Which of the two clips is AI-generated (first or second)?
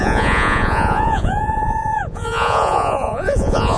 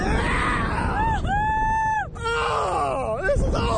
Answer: first